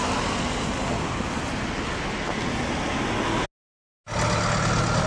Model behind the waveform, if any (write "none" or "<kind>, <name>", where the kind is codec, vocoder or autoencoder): none